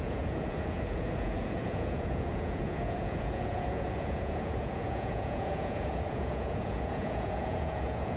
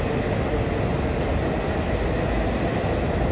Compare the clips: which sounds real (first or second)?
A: second